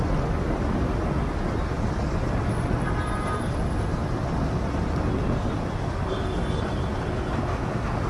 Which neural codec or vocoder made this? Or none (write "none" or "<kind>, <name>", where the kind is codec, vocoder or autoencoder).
none